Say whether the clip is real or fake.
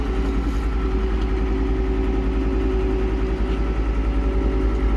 real